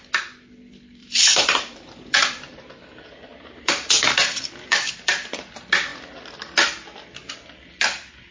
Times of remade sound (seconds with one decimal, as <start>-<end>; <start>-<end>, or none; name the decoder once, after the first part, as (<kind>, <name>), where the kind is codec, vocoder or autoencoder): 1.0-5.5 (vocoder, BigVGAN v2)